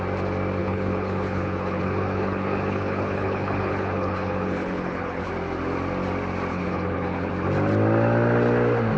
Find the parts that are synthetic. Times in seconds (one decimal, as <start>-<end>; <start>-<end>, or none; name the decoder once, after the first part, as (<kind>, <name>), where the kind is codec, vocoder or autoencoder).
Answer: 0.6-5.3 (codec, HILCodec); 6.5-7.3